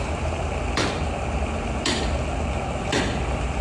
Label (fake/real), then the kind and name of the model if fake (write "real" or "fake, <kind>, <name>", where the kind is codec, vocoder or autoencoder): real